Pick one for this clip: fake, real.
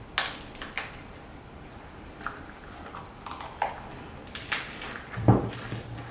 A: real